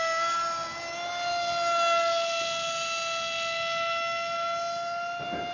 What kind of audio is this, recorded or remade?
recorded